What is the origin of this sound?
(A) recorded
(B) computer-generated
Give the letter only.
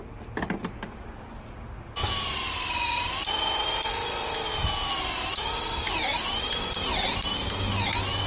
A